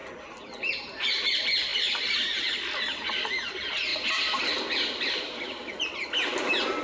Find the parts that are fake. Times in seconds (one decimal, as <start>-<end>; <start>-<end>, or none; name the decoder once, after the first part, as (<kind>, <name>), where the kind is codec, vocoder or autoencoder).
0.0-0.7 (vocoder, BigVGAN v2); 1.7-2.5; 3.9-5.7